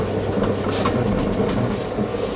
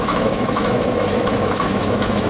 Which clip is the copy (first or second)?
second